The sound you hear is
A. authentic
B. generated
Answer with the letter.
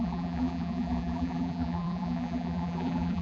B